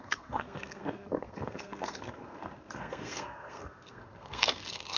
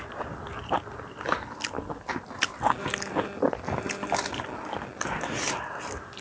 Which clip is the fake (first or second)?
first